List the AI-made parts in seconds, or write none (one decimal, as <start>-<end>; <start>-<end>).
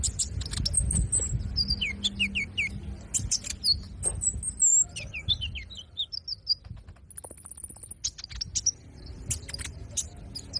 none